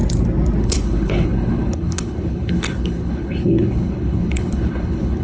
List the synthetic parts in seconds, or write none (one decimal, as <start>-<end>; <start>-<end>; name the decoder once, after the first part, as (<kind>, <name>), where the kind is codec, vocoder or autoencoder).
0.6-5.2 (codec, HILCodec)